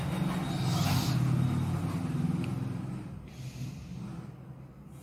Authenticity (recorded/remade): recorded